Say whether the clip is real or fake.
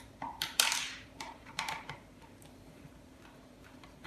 fake